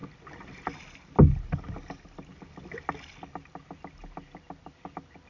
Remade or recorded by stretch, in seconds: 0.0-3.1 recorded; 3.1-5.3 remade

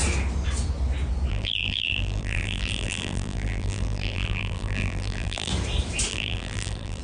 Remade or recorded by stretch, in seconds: 0.0-1.3 recorded; 1.3-5.5 remade; 5.5-6.1 recorded; 6.1-7.0 remade